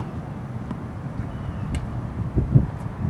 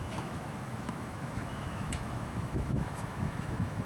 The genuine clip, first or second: first